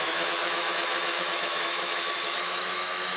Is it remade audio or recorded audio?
remade